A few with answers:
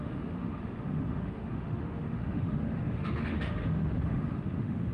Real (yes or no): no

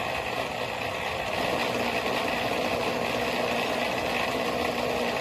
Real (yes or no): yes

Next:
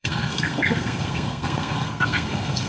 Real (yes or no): no